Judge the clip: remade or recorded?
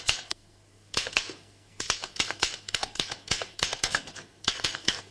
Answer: remade